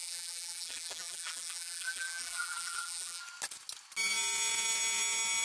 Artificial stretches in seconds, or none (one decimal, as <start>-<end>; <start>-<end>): 0.0-3.2